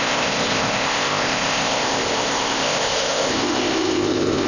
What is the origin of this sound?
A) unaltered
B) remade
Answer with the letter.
B